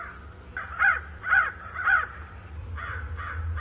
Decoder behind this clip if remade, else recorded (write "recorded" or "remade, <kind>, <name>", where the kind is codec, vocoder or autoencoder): recorded